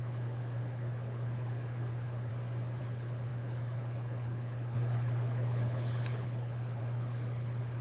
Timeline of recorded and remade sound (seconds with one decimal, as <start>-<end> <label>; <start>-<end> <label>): 0.0-2.3 remade; 2.3-2.8 recorded; 2.8-7.8 remade